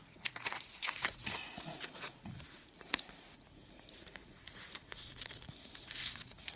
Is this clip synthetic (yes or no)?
yes